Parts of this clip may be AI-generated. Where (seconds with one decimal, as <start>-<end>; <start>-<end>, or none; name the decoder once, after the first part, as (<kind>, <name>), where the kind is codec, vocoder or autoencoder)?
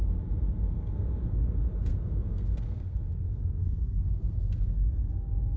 0.6-1.5 (codec, SNAC); 1.9-5.1